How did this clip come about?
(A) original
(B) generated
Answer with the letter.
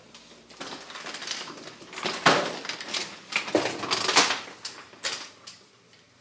A